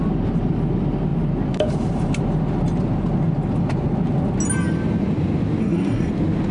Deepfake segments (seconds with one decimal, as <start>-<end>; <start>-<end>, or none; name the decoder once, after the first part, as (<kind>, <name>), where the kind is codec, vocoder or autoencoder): 5.6-6.1 (codec, SNAC)